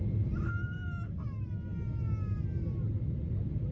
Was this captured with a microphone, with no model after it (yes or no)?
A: yes